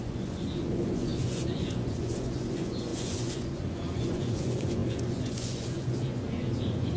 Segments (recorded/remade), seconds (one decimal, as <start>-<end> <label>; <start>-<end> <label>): 0.0-7.0 remade